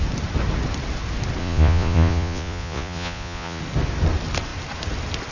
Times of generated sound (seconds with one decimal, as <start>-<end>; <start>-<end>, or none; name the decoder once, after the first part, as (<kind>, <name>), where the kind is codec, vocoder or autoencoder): 1.4-3.6 (vocoder, Vocos)